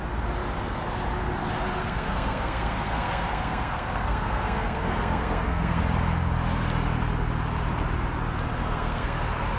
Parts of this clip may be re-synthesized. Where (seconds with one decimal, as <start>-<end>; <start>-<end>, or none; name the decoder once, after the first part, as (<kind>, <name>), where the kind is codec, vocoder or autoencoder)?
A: 1.8-5.8 (codec, SNAC); 8.6-9.2